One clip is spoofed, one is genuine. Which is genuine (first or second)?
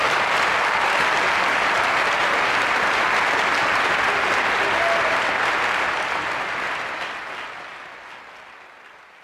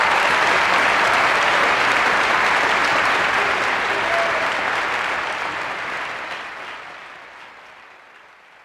first